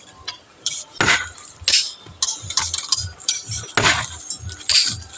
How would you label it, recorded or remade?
recorded